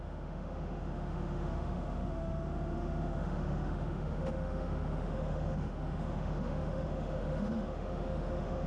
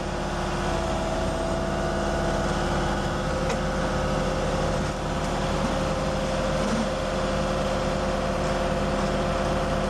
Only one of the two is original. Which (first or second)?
second